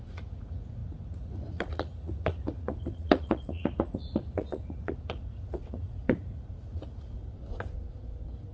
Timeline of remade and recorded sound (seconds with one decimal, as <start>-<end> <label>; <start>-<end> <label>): 0.0-7.2 remade; 7.2-8.5 recorded